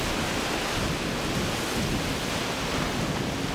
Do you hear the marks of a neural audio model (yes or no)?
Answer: no